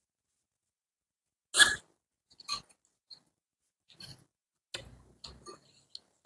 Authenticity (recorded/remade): recorded